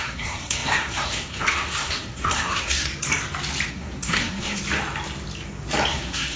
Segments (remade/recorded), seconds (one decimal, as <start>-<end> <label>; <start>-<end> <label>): 0.0-2.9 remade; 2.9-3.7 recorded; 3.7-4.6 remade; 4.6-5.9 recorded; 5.9-6.4 remade